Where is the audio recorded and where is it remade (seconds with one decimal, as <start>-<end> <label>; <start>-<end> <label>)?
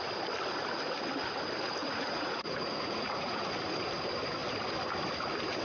0.0-1.8 recorded; 1.8-3.5 remade; 3.5-5.6 recorded